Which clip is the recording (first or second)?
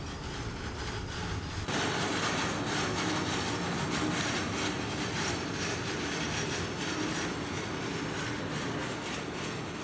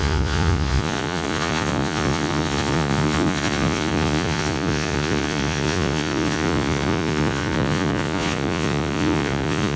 first